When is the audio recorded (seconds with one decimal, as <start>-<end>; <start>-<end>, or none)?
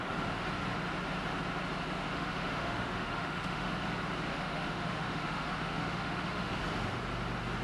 0.0-2.0; 3.7-4.3; 6.6-7.6